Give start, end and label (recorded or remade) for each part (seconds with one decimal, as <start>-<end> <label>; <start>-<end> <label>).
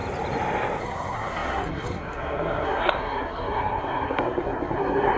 0.0-0.8 recorded; 0.8-5.2 remade